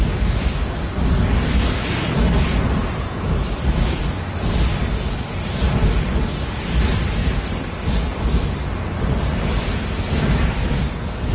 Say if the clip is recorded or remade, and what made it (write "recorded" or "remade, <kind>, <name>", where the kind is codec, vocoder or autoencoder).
recorded